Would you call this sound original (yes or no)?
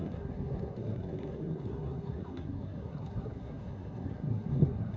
no